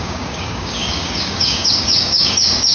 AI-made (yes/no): yes